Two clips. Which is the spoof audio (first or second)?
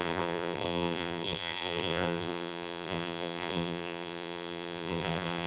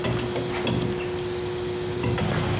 first